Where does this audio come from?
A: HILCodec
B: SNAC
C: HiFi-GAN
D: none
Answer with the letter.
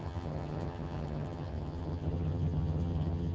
C